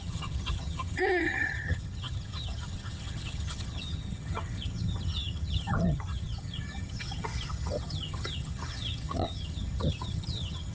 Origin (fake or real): fake